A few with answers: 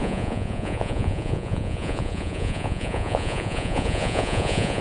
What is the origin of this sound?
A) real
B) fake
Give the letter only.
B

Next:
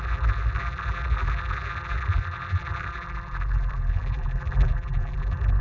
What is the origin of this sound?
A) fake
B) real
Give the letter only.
A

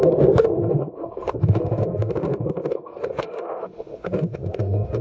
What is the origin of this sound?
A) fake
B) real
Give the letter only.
A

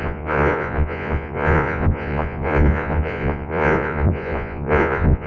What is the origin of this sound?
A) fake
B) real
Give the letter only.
A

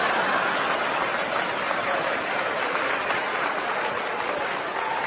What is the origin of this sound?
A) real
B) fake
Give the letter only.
A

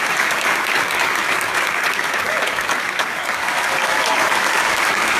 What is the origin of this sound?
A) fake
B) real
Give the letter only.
A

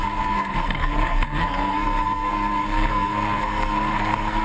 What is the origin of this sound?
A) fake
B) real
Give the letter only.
A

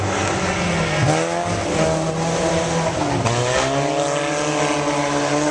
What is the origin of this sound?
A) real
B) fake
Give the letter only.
A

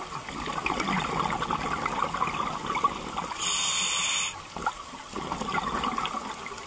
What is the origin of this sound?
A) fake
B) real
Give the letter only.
B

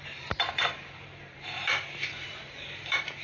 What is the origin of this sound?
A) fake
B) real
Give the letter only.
A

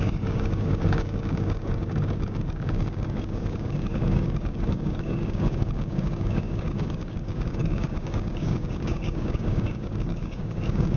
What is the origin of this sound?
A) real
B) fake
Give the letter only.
B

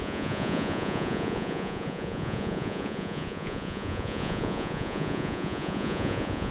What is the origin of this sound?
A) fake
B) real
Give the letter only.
A